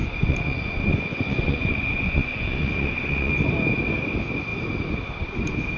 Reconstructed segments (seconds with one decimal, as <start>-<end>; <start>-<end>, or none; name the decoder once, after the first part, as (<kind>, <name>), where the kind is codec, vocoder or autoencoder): 0.0-3.3 (vocoder, Vocos)